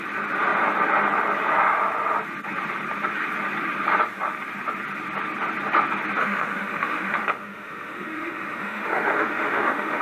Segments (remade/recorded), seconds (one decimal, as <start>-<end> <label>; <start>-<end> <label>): 0.0-6.2 recorded; 6.2-10.0 remade